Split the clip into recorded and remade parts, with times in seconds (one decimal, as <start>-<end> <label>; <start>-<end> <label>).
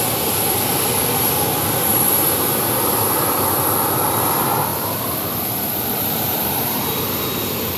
0.0-1.9 recorded; 1.9-3.2 remade; 3.2-4.7 recorded; 4.7-6.7 remade; 6.7-7.8 recorded